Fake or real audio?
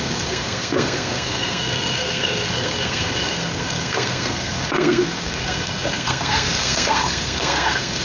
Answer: fake